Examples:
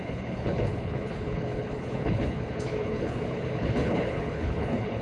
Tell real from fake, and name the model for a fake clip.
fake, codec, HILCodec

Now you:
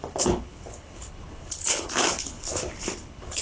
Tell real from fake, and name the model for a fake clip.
fake, codec, HILCodec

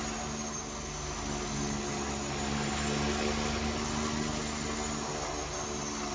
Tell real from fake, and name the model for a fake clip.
real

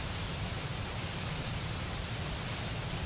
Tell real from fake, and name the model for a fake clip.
real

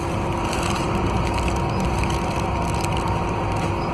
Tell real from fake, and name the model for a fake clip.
real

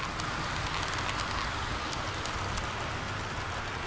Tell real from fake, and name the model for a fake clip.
real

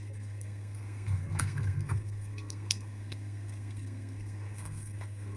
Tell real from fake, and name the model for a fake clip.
fake, codec, SNAC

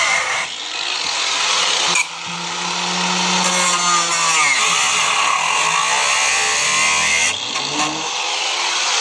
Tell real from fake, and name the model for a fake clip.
real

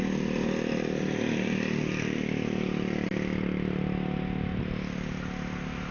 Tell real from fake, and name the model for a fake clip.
real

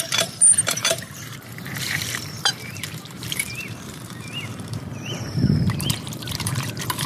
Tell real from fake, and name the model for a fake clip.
fake, vocoder, BigVGAN v2